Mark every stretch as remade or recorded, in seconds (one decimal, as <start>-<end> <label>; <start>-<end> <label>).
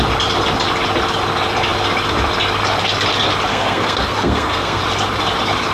0.0-3.5 recorded; 3.5-4.8 remade; 4.8-5.7 recorded